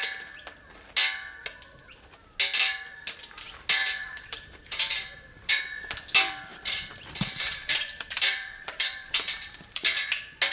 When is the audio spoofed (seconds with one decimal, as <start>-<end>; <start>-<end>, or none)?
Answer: 3.8-5.5; 6.5-10.0